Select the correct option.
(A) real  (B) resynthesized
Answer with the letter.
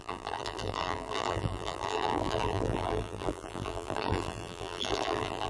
B